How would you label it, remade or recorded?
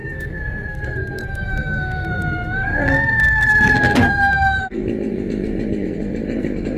remade